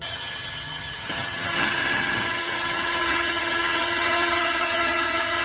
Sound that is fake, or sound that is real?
fake